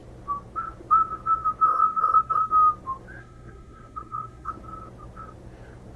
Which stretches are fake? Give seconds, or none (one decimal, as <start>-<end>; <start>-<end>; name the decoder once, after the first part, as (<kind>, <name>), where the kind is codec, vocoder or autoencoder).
1.6-2.5 (codec, SNAC); 3.2-4.5

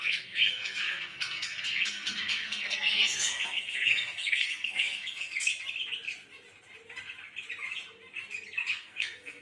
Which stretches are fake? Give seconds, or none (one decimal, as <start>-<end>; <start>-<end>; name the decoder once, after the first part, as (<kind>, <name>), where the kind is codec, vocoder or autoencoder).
0.0-5.5 (codec, SNAC); 8.7-9.4

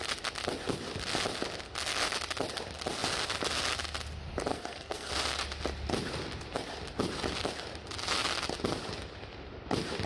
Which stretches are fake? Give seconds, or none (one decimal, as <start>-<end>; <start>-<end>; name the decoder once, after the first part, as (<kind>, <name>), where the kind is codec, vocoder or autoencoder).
4.5-5.1 (codec, SNAC)

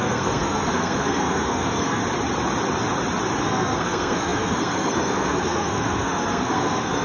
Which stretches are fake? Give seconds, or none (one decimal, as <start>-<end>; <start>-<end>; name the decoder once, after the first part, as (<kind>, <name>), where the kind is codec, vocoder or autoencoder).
0.0-2.0 (codec, SNAC); 3.4-7.0

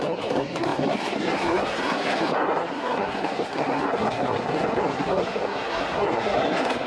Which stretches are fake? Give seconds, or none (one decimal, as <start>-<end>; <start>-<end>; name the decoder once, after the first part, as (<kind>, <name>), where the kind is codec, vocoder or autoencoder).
0.0-6.9 (codec, SNAC)